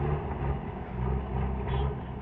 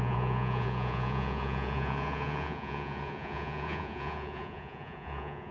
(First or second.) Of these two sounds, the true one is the first